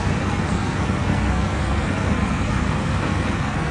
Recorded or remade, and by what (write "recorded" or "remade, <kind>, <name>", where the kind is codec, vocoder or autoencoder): remade, codec, SNAC